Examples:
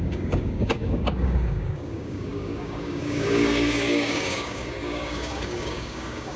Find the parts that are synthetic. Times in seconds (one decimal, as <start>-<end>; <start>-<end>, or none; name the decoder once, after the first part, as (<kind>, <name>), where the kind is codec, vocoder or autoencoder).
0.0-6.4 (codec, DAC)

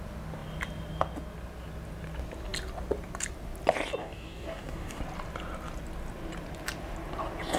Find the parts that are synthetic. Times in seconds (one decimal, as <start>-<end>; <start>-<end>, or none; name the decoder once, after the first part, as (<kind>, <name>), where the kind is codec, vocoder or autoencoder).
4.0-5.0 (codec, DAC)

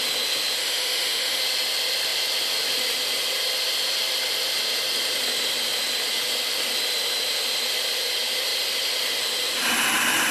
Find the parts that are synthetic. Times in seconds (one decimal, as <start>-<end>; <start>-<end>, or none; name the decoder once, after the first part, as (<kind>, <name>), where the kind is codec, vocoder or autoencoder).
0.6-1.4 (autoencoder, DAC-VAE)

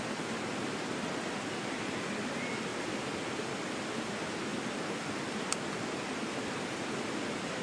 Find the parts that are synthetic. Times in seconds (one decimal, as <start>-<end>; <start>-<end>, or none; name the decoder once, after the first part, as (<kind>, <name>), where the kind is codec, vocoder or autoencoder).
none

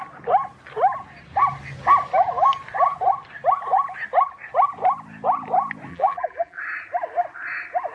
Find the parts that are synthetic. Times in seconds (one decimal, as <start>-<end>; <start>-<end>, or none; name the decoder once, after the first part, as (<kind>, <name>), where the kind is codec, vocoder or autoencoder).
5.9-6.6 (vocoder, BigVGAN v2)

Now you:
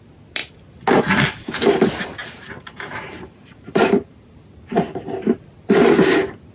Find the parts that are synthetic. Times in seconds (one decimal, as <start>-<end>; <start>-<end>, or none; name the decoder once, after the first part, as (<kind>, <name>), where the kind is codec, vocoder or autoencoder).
2.2-4.3 (vocoder, BigVGAN v2)

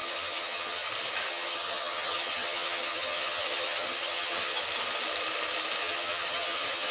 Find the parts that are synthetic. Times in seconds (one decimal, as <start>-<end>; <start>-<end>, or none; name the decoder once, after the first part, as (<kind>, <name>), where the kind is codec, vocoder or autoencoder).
0.0-0.9 (vocoder, HiFi-GAN); 1.3-4.6; 5.8-6.9

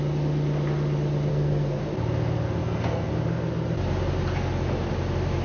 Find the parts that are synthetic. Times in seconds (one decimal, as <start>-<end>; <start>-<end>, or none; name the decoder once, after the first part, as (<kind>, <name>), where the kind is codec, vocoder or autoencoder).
1.3-1.8 (codec, SNAC); 2.6-3.1